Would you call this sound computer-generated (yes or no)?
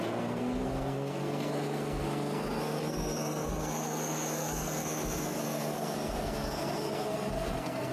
yes